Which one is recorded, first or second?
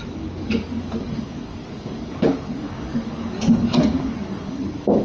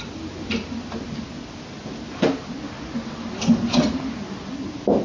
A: second